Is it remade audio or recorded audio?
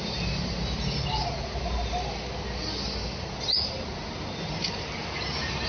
recorded